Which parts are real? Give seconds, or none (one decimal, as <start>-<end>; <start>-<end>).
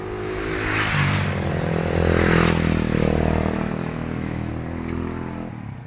0.0-3.8; 4.5-5.9